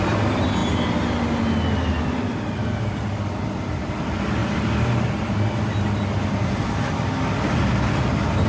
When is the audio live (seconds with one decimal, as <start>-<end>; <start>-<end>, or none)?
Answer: 0.0-8.5